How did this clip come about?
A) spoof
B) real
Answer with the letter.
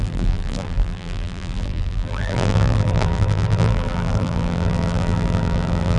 A